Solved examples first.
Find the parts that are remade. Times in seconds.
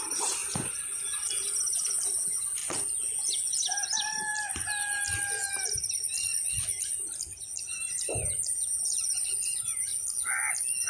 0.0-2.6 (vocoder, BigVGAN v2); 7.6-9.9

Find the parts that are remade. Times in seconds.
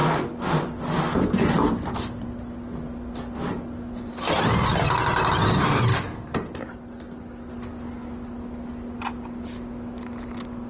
none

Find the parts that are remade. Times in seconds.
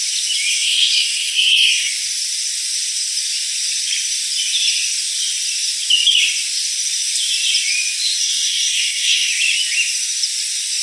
0.5-1.9 (codec, SNAC); 8.2-9.3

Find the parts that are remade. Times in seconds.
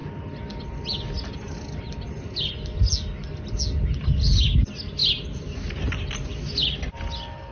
none